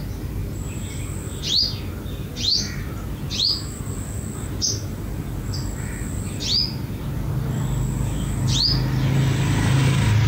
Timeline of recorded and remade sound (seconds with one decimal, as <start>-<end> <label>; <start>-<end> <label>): 0.0-0.4 recorded; 0.4-1.1 remade; 1.1-10.3 recorded